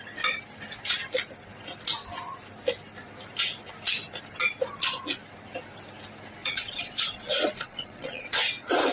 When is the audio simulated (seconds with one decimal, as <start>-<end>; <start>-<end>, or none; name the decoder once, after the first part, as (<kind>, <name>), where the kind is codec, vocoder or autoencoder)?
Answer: 6.4-8.4 (vocoder, Vocos)